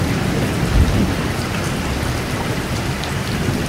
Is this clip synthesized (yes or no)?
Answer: no